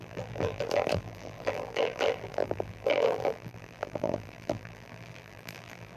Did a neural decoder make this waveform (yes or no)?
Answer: yes